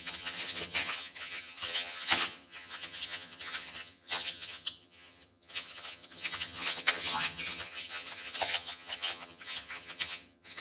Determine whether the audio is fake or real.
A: fake